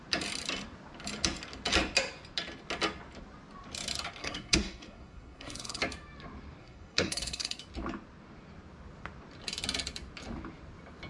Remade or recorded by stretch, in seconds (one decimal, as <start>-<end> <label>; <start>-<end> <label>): 0.0-4.2 recorded; 4.2-5.8 remade; 5.8-6.6 recorded; 6.6-7.6 remade; 7.6-11.1 recorded

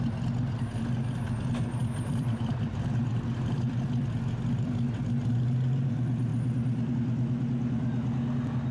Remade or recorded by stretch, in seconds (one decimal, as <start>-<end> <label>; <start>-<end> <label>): 0.0-1.8 recorded; 1.8-5.0 remade; 5.0-8.7 recorded

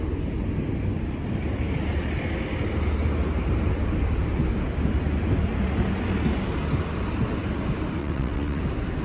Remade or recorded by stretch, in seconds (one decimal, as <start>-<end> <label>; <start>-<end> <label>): 0.0-8.0 recorded; 8.0-8.6 remade; 8.6-9.0 recorded

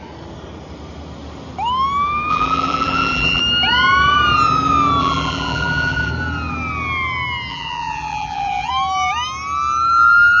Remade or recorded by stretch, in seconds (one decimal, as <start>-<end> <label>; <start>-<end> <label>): 0.0-2.3 recorded; 2.3-3.4 remade; 3.4-5.0 recorded; 5.0-6.1 remade; 6.1-7.5 recorded; 7.5-8.7 remade; 8.7-10.4 recorded

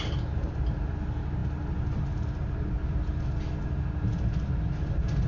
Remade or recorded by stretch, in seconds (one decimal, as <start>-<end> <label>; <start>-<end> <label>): 0.0-5.3 recorded

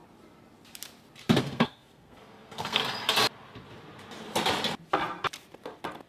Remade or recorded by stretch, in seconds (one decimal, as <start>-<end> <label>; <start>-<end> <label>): 0.0-1.4 recorded; 1.4-2.8 remade; 2.8-6.1 recorded

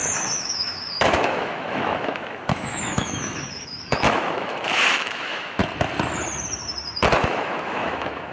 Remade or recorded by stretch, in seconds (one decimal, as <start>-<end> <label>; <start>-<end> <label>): 0.0-5.6 remade; 5.6-7.2 recorded; 7.2-8.3 remade